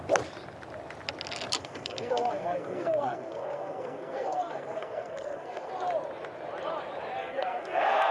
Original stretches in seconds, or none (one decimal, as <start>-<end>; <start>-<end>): 0.0-1.6; 5.7-7.2